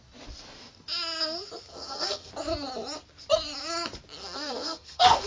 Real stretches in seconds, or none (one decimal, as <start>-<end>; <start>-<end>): 0.0-1.7; 2.3-4.2